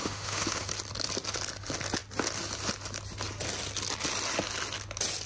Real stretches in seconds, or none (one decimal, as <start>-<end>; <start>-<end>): 0.7-5.3